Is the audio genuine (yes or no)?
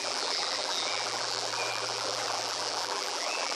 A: no